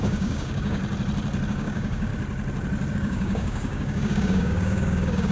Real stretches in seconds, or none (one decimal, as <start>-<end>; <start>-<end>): 0.8-1.5; 2.1-2.9